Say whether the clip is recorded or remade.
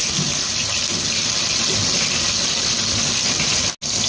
recorded